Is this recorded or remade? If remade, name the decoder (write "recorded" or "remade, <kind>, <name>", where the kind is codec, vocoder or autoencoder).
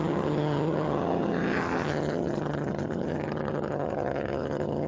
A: remade, vocoder, HiFi-GAN